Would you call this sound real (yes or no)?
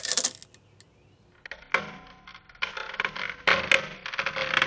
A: yes